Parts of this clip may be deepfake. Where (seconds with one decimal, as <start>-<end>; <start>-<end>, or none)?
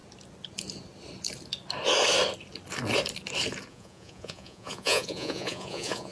3.7-6.1